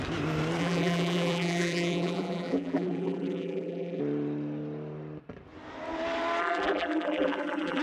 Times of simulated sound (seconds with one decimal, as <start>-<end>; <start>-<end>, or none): 0.6-4.0; 6.4-7.8